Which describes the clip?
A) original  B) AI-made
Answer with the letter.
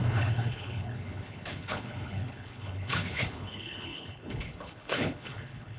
B